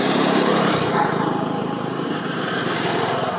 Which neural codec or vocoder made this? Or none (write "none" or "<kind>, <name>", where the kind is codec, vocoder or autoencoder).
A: vocoder, BigVGAN v2